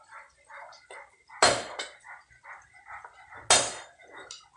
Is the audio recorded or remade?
recorded